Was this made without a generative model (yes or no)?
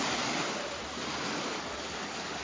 yes